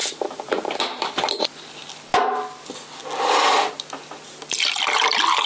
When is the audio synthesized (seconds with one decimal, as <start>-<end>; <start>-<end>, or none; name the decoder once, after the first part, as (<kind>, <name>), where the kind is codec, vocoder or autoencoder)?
0.0-1.4 (vocoder, BigVGAN v2)

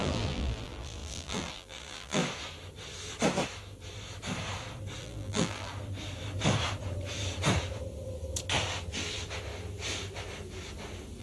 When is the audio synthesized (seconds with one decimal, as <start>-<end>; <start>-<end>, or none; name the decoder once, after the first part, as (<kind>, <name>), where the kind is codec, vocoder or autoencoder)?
0.0-2.2 (vocoder, BigVGAN v2); 5.0-5.7

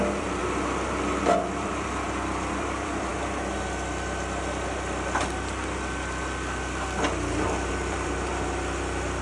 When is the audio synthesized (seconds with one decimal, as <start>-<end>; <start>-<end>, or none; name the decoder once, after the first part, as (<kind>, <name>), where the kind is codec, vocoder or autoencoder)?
0.0-0.4 (vocoder, BigVGAN v2); 1.4-3.1; 7.7-8.3

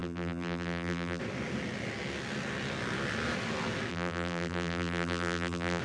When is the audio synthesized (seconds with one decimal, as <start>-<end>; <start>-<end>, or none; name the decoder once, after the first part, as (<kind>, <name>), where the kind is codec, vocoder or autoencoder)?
0.0-1.2 (vocoder, BigVGAN v2); 3.9-5.8

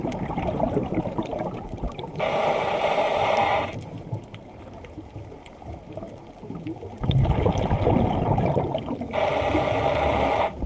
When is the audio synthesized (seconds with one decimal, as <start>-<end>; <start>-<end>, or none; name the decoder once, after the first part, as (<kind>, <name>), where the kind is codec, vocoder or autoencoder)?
0.0-6.2 (vocoder, BigVGAN v2)